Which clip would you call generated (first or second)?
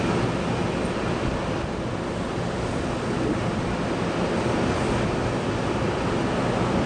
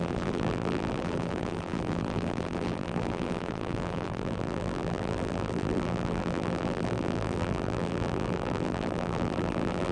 second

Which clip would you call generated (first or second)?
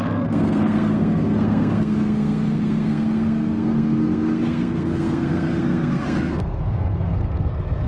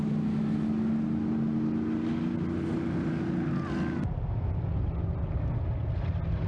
first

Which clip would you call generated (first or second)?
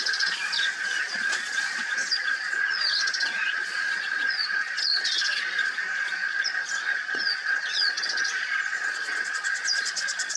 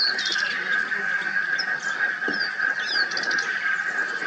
first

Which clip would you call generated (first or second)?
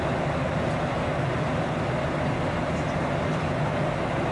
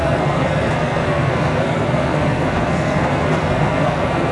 second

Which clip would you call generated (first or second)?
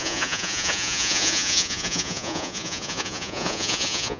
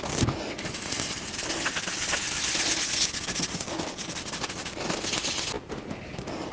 first